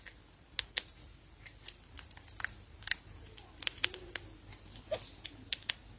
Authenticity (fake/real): real